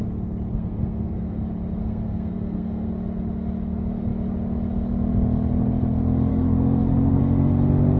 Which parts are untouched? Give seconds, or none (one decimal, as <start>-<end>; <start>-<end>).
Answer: 0.0-0.5; 1.4-1.8; 2.9-6.3; 7.2-8.0